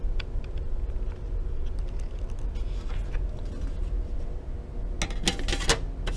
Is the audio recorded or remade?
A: recorded